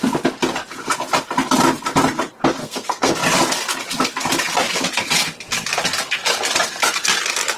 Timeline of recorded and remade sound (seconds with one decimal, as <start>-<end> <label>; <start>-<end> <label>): 0.0-2.6 recorded; 2.6-3.1 remade; 3.1-7.6 recorded